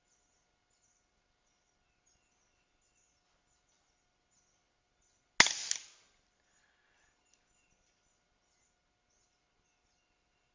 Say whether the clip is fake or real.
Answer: real